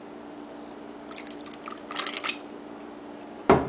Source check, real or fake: real